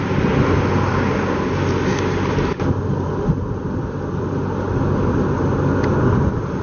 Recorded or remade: recorded